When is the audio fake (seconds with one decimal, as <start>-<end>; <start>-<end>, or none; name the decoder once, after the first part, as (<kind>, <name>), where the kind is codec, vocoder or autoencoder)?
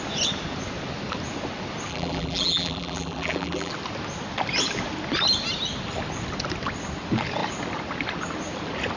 1.9-3.7 (vocoder, BigVGAN v2)